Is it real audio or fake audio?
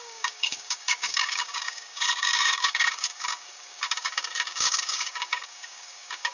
fake